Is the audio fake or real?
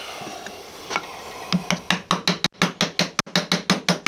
real